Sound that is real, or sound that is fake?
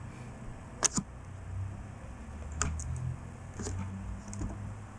real